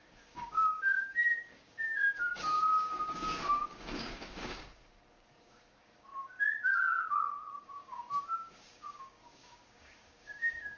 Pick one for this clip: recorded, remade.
remade